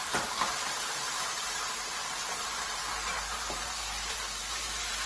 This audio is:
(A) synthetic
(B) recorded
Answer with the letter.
A